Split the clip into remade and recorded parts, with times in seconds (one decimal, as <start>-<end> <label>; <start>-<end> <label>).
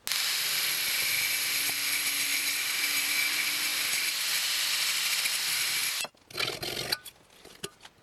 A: 0.0-8.0 recorded